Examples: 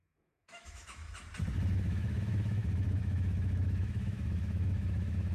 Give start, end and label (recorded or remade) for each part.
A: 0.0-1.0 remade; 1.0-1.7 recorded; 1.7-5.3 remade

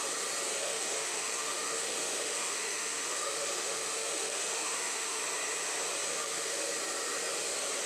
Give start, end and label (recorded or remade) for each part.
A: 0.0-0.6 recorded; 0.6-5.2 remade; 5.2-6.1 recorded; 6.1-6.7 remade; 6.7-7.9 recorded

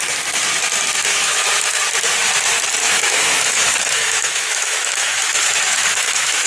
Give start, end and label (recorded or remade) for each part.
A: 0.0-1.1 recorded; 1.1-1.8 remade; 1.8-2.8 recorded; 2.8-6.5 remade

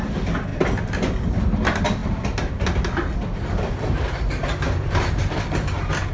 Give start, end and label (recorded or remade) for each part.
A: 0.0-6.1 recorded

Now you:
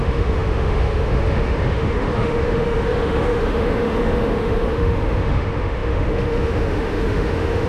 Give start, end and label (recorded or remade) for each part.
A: 0.0-7.7 remade

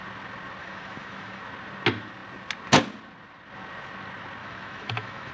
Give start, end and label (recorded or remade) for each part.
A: 0.0-0.6 recorded; 0.6-1.4 remade; 1.4-4.4 recorded; 4.4-5.3 remade